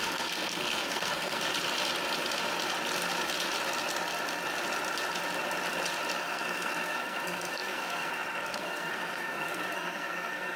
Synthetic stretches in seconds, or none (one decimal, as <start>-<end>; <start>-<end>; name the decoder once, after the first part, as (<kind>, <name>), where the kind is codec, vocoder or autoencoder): 0.0-1.5 (codec, SNAC); 6.2-10.6